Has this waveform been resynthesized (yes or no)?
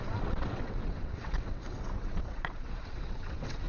yes